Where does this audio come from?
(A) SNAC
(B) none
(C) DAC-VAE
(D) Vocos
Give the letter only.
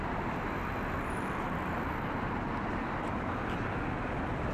B